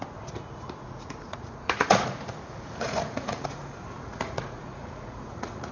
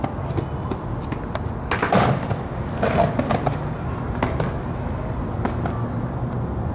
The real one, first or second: second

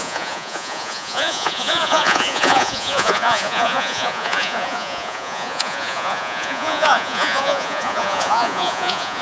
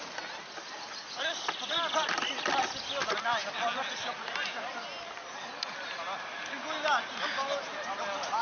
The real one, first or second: second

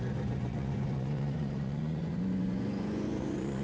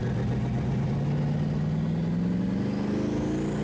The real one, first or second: second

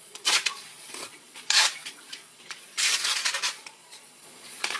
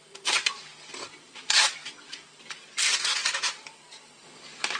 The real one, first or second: second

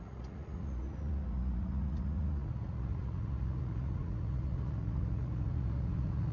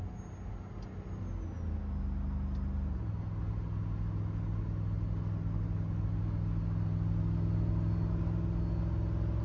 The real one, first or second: second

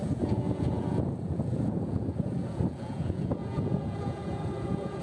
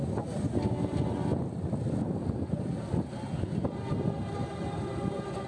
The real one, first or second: second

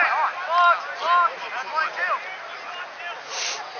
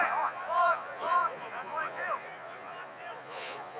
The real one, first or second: first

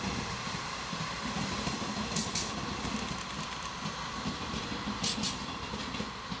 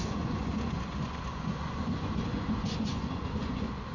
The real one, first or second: first